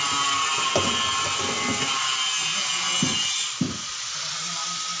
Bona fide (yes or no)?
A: yes